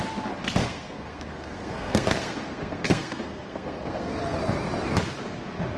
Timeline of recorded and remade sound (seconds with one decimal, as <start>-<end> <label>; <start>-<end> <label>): 0.0-0.6 recorded; 0.6-4.1 remade; 4.1-5.8 recorded